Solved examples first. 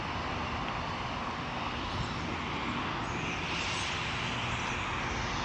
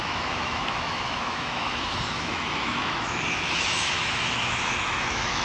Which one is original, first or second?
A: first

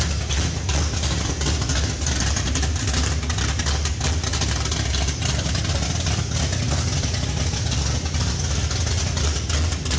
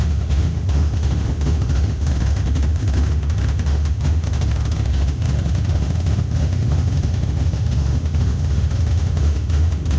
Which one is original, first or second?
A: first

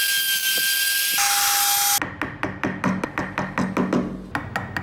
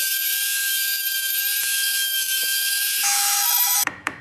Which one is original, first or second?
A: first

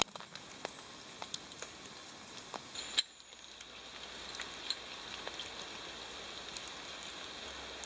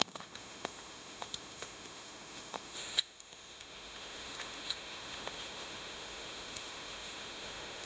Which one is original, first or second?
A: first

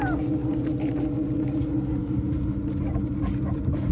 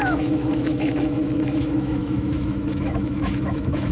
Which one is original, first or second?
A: first